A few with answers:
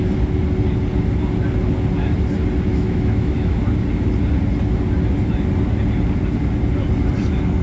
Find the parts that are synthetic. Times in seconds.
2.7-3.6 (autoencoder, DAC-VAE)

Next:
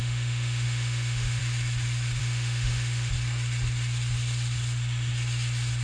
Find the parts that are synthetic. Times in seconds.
0.0-1.4 (autoencoder, DAC-VAE); 2.2-3.1

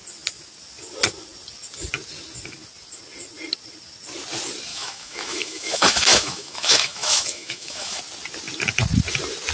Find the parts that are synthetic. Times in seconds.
4.7-8.0 (autoencoder, DAC-VAE)

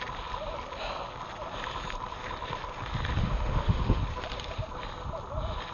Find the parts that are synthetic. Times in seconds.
3.2-4.0 (autoencoder, DAC-VAE)

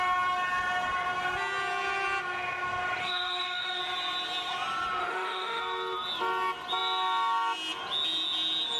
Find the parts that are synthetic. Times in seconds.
3.0-3.8 (autoencoder, DAC-VAE); 5.0-5.6

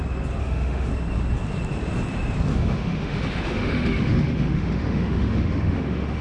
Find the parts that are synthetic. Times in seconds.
0.4-0.9 (autoencoder, DAC-VAE); 2.5-6.2